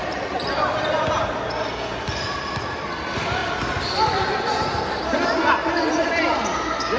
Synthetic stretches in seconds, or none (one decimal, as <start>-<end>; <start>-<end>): none